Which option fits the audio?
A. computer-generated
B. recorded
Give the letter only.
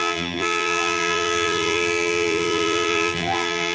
A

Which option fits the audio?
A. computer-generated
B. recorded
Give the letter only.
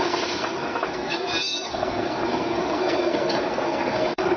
A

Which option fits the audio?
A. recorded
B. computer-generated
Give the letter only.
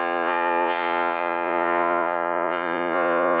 B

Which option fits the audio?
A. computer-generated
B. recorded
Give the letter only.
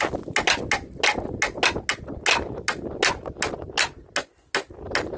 B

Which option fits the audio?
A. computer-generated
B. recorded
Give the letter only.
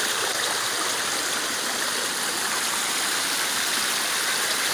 B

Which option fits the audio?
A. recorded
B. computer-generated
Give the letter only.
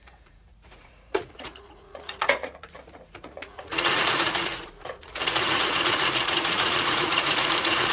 B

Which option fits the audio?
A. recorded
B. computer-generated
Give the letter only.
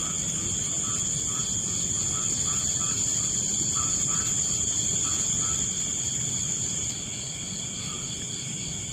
A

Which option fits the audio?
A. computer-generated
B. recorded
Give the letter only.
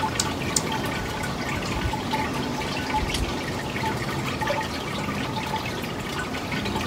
B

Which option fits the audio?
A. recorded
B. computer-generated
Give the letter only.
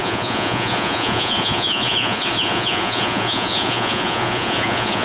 B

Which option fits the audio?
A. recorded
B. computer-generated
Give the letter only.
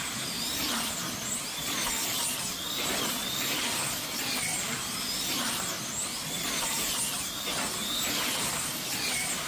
A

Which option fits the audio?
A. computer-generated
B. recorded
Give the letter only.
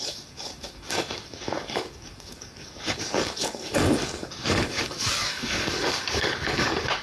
A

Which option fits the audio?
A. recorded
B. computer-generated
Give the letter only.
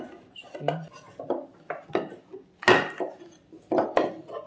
A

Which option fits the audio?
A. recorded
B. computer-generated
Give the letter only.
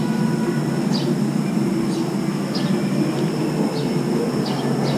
A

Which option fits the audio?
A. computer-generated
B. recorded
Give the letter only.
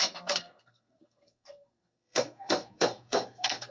A